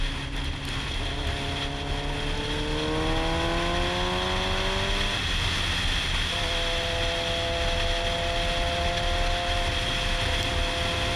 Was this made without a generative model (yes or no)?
yes